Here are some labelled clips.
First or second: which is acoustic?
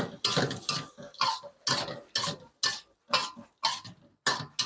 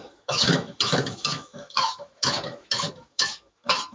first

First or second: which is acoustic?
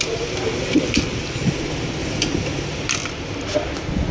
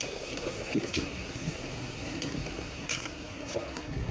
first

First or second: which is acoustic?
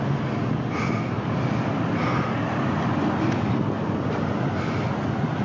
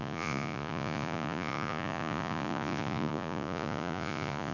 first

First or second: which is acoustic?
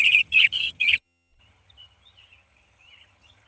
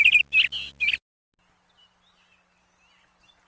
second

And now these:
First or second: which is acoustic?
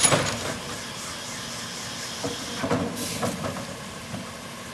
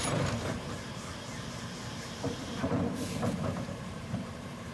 first